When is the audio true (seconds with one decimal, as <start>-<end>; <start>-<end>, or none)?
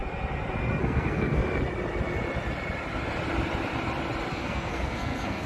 0.0-0.8; 1.4-4.3